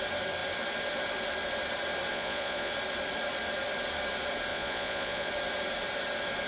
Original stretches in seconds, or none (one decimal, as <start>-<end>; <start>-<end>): 0.0-2.1; 2.7-4.5; 5.3-6.5